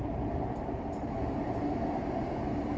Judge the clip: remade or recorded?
recorded